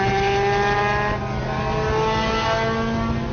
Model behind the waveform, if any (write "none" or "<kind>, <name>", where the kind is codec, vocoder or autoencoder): none